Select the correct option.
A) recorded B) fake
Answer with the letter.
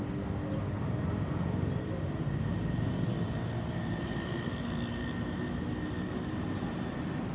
A